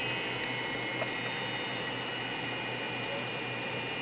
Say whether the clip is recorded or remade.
recorded